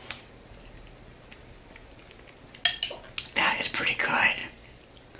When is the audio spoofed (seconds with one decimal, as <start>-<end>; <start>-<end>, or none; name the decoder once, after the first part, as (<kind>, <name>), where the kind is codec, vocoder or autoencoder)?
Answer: none